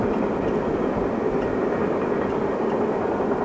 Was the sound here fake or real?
real